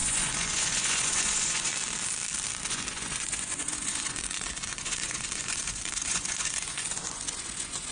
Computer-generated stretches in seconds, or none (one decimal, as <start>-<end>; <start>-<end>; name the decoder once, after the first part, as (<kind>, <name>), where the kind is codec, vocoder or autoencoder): 0.0-1.7 (vocoder, Vocos); 2.7-7.9